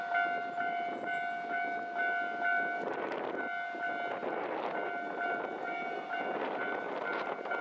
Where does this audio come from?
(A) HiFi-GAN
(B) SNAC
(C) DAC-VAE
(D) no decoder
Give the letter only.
D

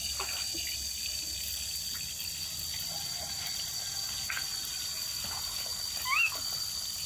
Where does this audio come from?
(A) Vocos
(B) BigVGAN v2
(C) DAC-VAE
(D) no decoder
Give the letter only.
D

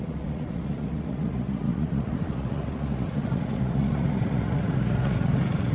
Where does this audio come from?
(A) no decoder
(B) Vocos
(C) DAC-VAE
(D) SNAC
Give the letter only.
B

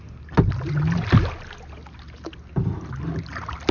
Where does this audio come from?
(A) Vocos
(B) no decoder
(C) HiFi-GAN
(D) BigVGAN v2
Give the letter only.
B